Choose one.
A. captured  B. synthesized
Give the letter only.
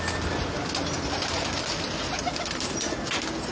A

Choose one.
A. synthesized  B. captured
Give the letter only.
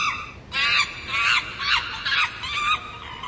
B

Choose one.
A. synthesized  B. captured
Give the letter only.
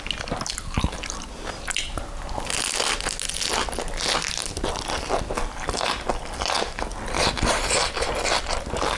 B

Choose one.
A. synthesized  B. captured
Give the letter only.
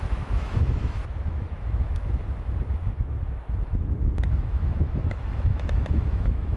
A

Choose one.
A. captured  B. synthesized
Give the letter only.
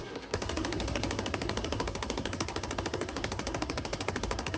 B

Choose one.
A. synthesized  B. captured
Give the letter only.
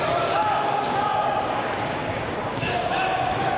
A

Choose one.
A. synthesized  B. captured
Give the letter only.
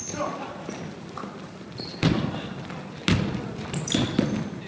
B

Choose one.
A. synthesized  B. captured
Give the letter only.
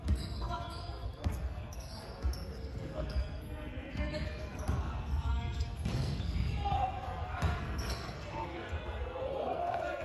A